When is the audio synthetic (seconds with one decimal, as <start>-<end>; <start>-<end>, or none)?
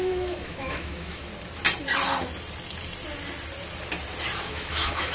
0.0-1.3; 4.4-5.1